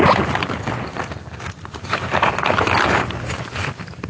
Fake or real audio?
real